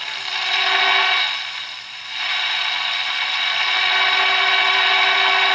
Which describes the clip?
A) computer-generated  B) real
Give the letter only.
B